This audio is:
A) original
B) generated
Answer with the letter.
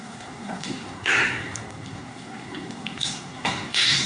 B